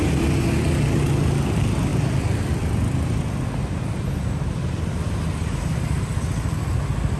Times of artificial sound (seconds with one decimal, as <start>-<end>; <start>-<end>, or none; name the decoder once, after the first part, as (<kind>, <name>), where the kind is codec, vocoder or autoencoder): none